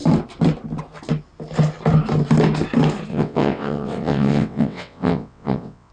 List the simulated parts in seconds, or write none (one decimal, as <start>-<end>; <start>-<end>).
3.1-5.9